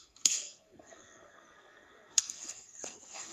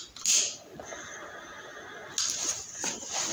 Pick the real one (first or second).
second